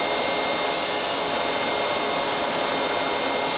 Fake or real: real